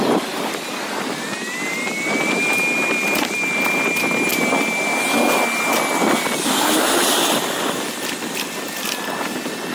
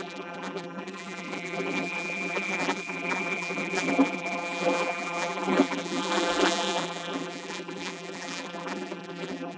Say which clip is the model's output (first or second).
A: second